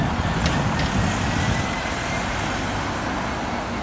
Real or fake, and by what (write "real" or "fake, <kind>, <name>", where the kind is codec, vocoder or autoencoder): real